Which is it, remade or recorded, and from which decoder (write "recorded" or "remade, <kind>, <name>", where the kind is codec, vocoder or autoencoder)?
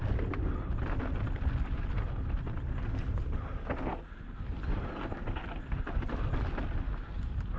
recorded